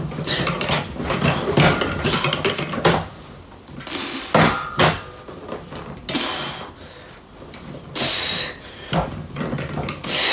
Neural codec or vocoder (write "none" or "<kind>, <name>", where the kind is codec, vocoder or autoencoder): none